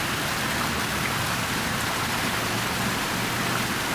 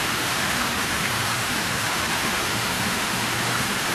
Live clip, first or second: first